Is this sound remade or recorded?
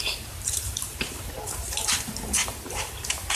remade